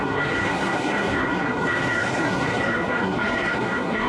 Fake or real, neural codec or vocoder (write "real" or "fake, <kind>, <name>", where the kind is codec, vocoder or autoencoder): fake, codec, SNAC